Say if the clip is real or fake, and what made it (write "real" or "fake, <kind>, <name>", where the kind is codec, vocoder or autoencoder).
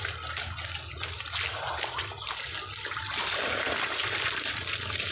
real